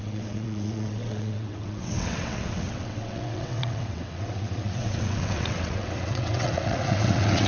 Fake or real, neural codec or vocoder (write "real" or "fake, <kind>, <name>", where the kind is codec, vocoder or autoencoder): fake, vocoder, WaveNeXt